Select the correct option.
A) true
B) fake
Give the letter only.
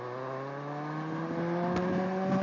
A